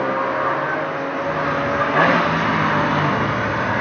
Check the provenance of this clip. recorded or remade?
recorded